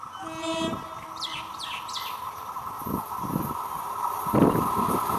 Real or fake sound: real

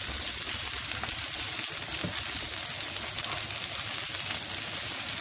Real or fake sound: real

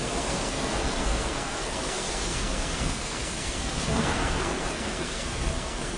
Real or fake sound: fake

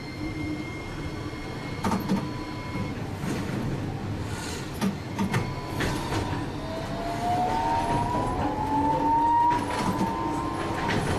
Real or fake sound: real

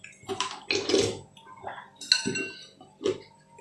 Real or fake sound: real